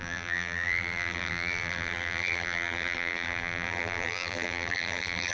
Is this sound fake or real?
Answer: fake